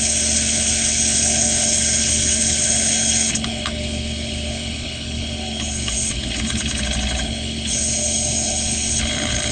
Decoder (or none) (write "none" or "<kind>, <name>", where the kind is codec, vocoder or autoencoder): codec, HILCodec